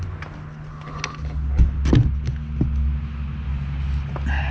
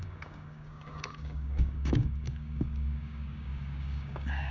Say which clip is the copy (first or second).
second